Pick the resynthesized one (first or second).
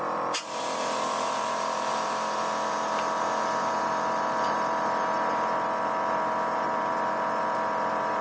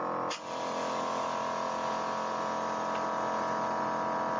first